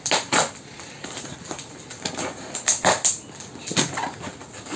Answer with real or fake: real